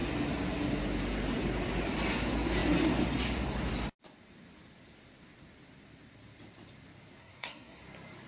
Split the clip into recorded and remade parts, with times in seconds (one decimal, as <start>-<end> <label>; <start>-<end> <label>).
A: 0.0-7.2 recorded; 7.2-7.8 remade; 7.8-8.3 recorded

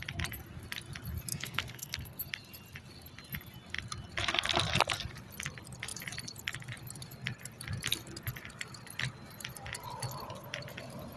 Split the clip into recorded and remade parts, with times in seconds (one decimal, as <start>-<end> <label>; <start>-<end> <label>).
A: 0.0-1.3 recorded; 1.3-2.2 remade; 2.2-11.2 recorded